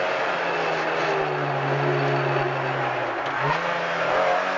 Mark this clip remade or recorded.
recorded